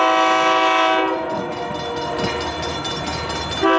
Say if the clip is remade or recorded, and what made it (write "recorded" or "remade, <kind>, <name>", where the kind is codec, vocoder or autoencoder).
recorded